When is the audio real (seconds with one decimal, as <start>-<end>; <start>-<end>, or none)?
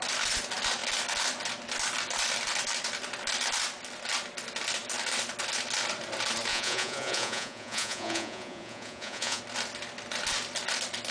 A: 0.0-6.5; 9.4-11.1